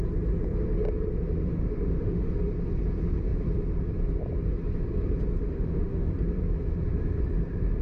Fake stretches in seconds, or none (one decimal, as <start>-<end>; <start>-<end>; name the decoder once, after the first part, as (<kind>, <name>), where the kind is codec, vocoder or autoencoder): 1.4-2.3 (autoencoder, DAC-VAE); 5.4-6.1

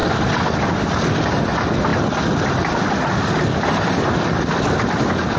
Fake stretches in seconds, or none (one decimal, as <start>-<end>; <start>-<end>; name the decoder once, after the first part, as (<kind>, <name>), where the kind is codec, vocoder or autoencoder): none

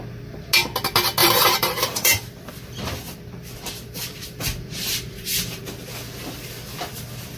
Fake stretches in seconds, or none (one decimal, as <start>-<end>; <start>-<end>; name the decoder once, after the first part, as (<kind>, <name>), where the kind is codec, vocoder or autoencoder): 1.2-5.6 (vocoder, BigVGAN v2)

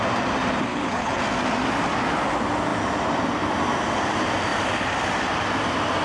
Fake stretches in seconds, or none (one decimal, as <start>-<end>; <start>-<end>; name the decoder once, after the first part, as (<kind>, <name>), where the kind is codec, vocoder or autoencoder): 0.7-1.2 (codec, HILCodec)

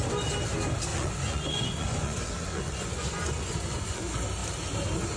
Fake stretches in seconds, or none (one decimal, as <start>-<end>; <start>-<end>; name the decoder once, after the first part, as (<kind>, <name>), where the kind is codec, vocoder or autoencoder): 0.9-4.0 (vocoder, Vocos)

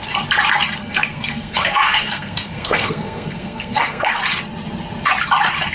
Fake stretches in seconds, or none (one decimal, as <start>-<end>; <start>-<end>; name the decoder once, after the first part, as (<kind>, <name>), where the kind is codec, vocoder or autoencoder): 0.8-4.2 (codec, SNAC)

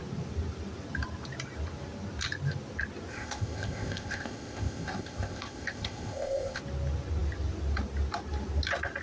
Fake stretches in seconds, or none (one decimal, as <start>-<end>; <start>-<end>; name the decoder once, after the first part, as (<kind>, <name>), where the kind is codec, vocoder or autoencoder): 3.1-6.6 (codec, ZipCodec)

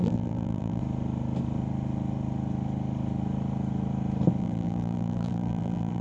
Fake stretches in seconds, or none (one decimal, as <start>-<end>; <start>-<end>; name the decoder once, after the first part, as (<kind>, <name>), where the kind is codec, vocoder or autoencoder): 0.0-0.8 (vocoder, BigVGAN v2); 4.4-6.0